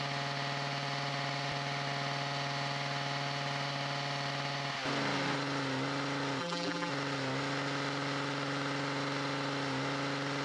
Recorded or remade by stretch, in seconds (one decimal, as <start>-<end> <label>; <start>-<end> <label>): 0.0-6.4 recorded; 6.4-6.9 remade; 6.9-10.4 recorded